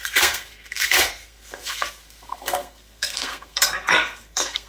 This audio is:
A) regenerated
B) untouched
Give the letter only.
A